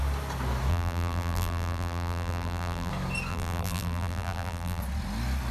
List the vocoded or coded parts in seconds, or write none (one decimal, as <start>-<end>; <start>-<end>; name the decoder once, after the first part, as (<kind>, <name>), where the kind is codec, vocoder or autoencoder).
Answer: 0.7-2.9 (vocoder, BigVGAN v2); 3.3-4.8